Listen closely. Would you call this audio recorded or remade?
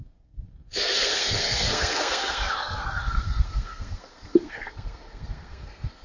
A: remade